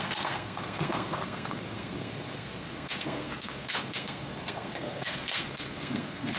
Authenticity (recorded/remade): remade